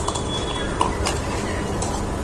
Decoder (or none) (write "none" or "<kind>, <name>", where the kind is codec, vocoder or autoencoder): none